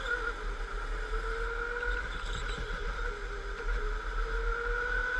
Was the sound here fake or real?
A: real